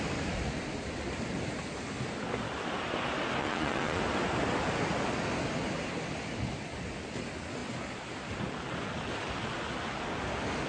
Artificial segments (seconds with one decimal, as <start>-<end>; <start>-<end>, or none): 3.4-4.0